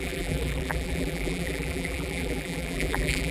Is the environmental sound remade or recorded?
remade